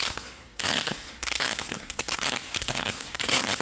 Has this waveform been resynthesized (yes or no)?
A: yes